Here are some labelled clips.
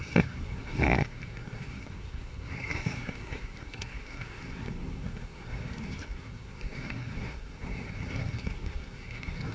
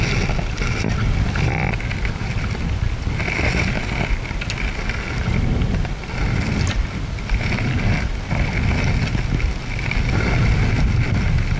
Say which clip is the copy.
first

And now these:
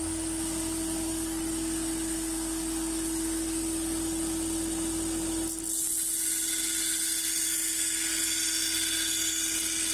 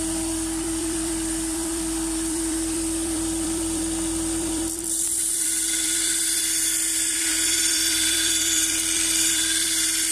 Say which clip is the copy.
second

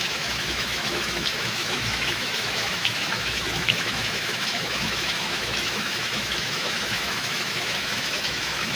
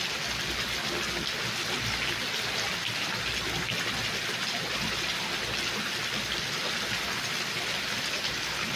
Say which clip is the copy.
first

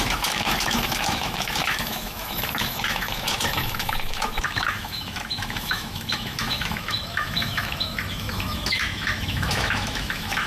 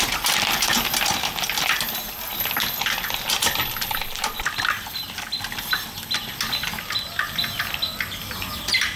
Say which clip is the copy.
first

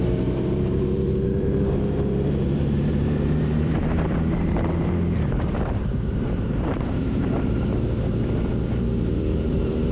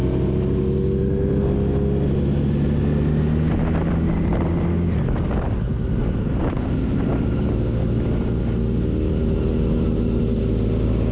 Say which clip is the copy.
first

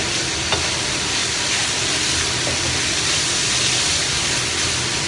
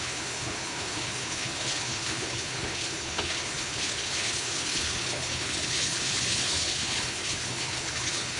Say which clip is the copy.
second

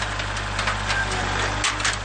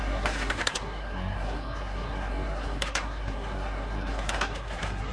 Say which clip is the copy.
second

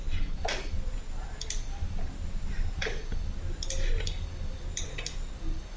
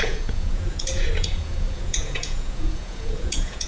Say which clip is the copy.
second